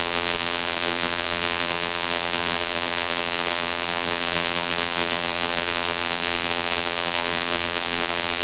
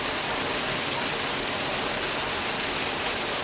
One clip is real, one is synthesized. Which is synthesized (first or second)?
first